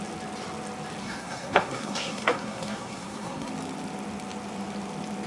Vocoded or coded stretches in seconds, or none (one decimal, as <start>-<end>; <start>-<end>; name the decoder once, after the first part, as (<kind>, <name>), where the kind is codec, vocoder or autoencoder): 1.0-3.5 (codec, SNAC)